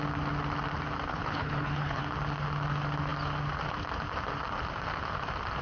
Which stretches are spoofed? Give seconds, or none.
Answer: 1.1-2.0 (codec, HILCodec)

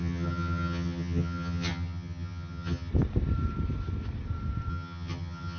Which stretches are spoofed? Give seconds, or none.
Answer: 0.0-2.9 (vocoder, HiFi-GAN); 4.7-5.6

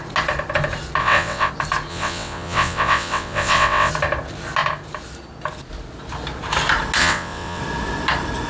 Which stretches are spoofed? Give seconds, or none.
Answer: 1.0-1.5 (vocoder, WaveNeXt); 1.9-3.9; 7.0-7.6

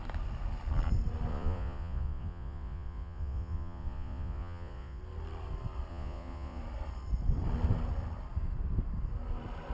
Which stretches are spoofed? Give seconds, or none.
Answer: 1.3-5.0 (vocoder, Vocos); 5.9-6.6